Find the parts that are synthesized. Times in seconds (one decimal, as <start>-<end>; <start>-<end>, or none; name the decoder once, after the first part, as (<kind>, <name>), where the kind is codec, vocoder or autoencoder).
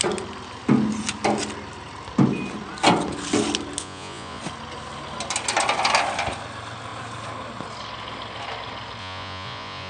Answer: 3.8-4.4 (vocoder, Vocos); 9.0-9.9